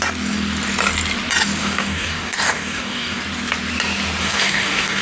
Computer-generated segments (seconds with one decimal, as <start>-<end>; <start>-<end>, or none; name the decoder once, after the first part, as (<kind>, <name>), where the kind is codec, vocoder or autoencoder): 1.6-3.2 (codec, DAC); 4.2-5.0